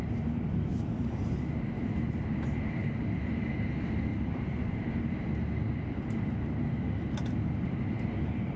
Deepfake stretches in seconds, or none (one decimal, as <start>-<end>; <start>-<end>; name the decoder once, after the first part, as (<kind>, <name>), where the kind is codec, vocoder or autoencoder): 0.7-1.4 (vocoder, BigVGAN v2); 4.1-5.0